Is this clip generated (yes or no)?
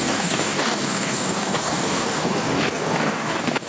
yes